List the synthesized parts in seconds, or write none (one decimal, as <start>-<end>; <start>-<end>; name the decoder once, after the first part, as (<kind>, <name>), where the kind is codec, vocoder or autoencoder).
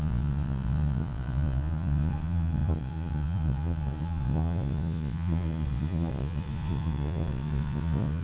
0.0-8.2 (vocoder, Vocos)